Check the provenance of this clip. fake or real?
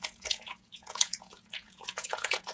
fake